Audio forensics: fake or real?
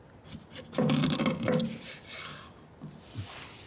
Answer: real